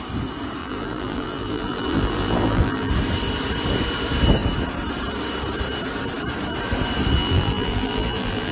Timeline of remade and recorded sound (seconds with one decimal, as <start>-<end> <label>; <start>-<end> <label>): 0.0-0.6 recorded; 0.6-2.9 remade; 2.9-7.2 recorded; 7.2-8.5 remade